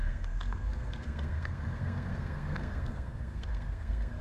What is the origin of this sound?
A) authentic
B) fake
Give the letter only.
B